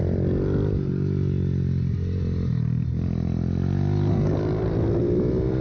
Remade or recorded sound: recorded